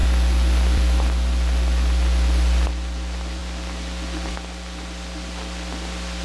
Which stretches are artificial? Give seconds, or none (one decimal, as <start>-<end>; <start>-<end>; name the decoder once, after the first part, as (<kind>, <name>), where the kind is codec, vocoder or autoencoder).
none